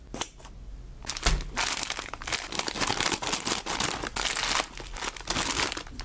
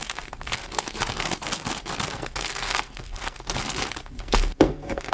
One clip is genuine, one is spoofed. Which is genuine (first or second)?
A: first